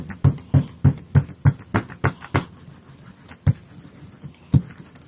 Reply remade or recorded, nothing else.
recorded